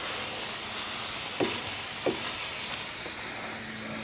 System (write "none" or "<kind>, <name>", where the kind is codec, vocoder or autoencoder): none